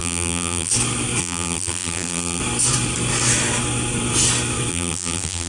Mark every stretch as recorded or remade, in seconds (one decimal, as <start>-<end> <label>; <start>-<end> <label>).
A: 0.0-0.7 remade; 0.7-1.2 recorded; 1.2-2.4 remade; 2.4-4.7 recorded; 4.7-5.5 remade